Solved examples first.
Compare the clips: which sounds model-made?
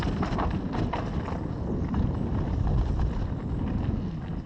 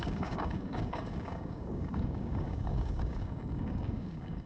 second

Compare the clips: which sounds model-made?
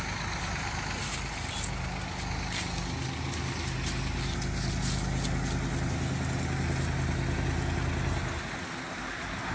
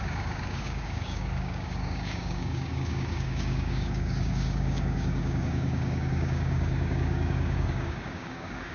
second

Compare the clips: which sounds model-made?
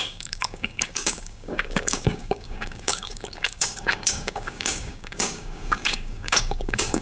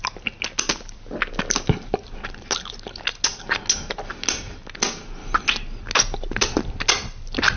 first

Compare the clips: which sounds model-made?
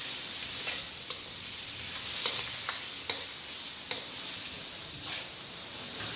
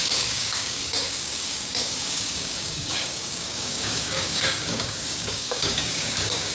second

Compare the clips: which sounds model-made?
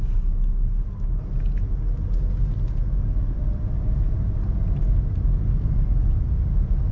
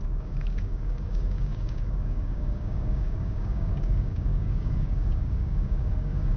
second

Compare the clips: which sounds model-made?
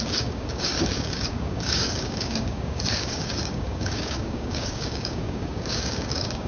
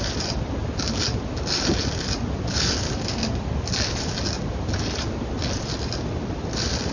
first